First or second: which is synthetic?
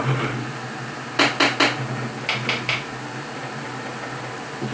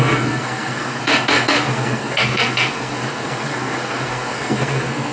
second